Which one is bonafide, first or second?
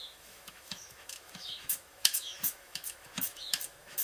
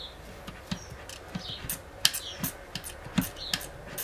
second